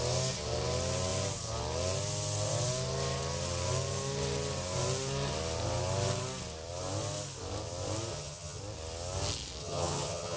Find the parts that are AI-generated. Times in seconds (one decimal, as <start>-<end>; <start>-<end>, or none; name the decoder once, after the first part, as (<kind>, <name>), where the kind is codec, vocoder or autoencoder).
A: 8.1-8.6 (vocoder, HiFi-GAN); 9.6-10.4